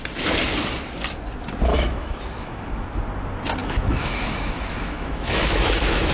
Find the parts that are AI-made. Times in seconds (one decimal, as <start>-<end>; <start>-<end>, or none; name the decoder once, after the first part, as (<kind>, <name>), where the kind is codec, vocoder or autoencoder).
1.7-3.0 (autoencoder, DAC-VAE); 3.6-6.1